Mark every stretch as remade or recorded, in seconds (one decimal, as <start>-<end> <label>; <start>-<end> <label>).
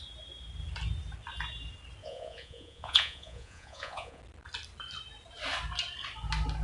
0.0-2.0 recorded; 2.0-4.2 remade; 4.2-6.6 recorded